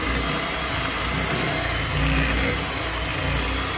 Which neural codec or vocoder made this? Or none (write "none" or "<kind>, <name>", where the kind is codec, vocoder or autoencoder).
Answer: none